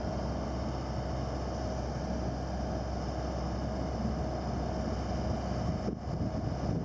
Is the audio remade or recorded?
recorded